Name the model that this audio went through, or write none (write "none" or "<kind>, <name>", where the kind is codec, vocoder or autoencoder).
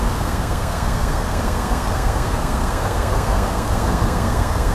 codec, SNAC